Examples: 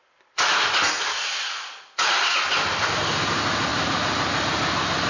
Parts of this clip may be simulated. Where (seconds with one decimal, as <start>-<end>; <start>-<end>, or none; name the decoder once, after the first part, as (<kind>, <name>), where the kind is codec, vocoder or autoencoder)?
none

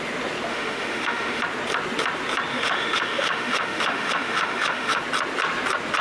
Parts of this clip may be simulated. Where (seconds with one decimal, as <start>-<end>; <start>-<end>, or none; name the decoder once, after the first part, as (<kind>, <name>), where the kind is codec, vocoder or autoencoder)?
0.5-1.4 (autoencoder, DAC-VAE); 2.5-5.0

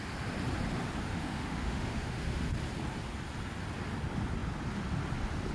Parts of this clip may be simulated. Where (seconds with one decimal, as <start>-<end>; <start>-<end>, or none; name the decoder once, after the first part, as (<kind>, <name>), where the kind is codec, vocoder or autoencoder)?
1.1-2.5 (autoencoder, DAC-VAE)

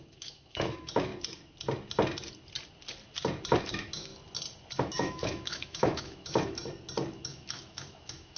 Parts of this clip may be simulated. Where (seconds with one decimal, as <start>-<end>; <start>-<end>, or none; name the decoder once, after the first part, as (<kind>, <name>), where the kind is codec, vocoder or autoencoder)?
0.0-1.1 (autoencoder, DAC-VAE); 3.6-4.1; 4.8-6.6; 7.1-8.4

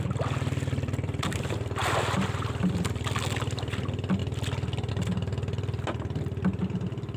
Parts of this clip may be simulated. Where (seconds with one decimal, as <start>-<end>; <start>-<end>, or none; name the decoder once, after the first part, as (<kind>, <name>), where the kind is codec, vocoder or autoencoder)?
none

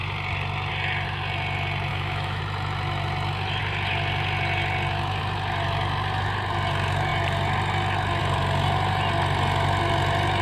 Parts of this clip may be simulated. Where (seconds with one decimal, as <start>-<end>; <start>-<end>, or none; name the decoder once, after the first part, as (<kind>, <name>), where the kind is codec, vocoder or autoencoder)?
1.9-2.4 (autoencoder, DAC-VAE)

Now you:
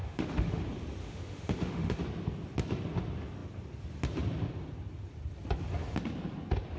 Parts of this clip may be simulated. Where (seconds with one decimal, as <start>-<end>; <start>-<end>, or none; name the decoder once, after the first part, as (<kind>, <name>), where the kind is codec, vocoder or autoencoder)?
0.0-0.6 (autoencoder, DAC-VAE); 1.0-2.0

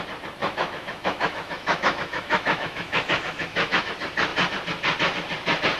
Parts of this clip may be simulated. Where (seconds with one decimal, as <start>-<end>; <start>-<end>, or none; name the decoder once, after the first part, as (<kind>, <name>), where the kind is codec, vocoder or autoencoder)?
0.4-3.9 (autoencoder, DAC-VAE)